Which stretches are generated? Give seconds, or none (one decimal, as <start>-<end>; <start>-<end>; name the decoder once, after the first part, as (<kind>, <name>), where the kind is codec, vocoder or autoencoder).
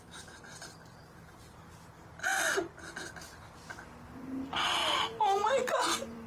4.8-6.3 (vocoder, BigVGAN v2)